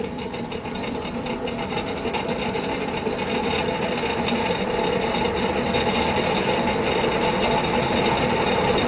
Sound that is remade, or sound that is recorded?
recorded